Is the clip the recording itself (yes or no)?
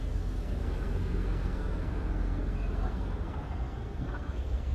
no